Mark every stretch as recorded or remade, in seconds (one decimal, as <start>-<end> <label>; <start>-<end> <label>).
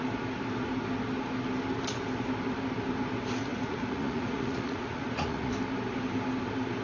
0.0-3.5 recorded; 3.5-5.5 remade; 5.5-6.8 recorded